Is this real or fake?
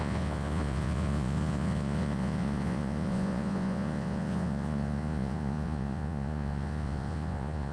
fake